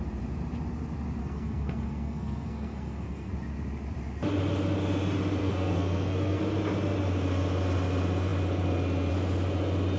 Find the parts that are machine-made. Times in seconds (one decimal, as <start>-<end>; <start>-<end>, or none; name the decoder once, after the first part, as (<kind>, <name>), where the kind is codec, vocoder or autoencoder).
1.2-3.3 (codec, SNAC); 5.4-6.4